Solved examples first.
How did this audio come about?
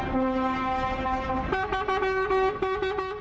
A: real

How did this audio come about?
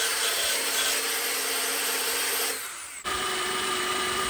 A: fake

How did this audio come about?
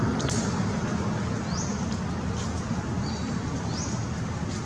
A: real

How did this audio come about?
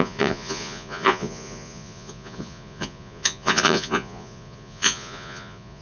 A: fake